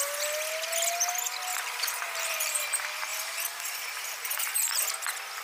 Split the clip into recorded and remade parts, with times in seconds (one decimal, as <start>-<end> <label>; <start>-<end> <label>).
0.0-1.5 recorded; 1.5-2.6 remade; 2.6-3.1 recorded; 3.1-4.8 remade; 4.8-5.4 recorded